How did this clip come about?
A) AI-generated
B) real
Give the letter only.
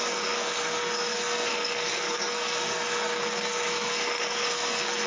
A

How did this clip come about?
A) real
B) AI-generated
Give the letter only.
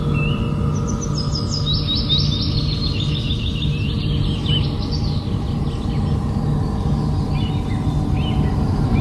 A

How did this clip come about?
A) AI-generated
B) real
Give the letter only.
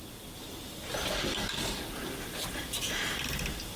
B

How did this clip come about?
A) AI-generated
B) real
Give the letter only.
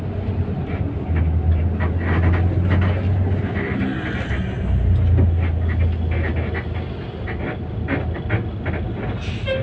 B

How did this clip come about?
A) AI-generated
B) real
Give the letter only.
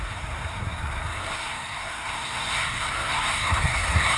A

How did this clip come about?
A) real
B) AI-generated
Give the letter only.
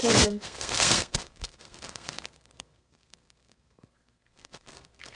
B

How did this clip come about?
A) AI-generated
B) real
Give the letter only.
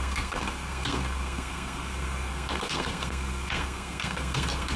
A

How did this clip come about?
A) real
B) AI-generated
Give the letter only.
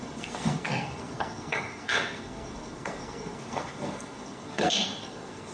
B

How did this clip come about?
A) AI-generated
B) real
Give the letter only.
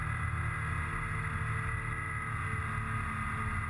B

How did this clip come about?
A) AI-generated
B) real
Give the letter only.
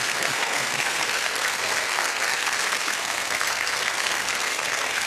A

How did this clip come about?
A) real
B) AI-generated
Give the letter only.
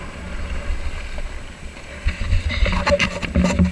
A